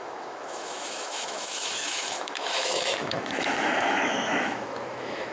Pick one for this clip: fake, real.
fake